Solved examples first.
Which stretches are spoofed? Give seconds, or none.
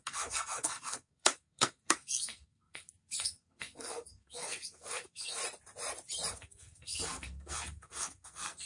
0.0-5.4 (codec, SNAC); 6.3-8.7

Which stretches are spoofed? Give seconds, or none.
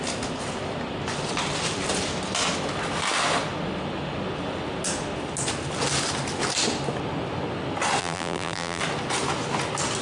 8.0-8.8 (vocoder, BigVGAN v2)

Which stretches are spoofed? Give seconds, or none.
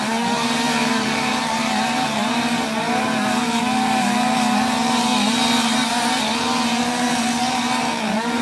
0.0-8.4 (vocoder, BigVGAN v2)